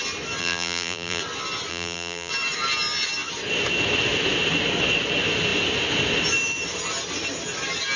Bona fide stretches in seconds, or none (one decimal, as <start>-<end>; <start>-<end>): 0.0-0.4; 1.2-1.7; 2.3-8.0